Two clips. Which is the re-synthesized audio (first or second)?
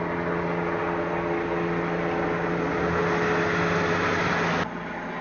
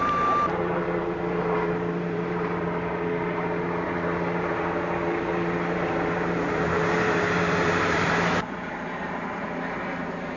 second